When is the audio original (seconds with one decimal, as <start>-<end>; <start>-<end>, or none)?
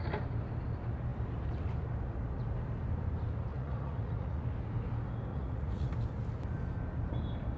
0.0-3.5; 4.4-5.3; 5.9-7.6